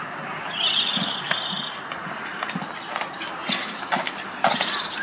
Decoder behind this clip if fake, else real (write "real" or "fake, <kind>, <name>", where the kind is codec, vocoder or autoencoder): real